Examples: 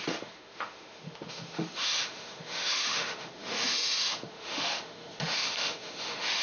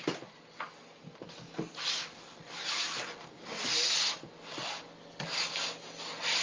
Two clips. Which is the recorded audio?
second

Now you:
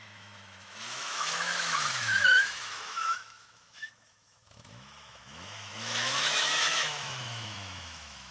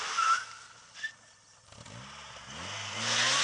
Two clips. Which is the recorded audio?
second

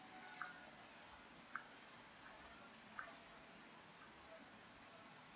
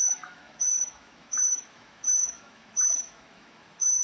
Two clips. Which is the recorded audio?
first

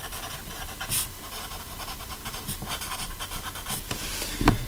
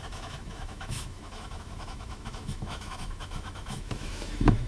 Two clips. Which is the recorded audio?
first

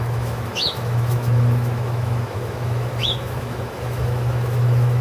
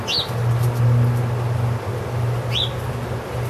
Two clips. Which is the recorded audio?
second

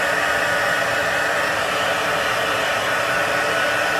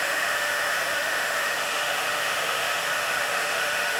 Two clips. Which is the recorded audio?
first